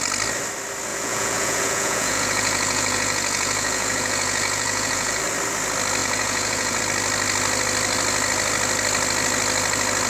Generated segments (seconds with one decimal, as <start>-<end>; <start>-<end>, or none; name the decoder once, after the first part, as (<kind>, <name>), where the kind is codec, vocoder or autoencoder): 0.9-5.2 (vocoder, Vocos); 6.0-6.8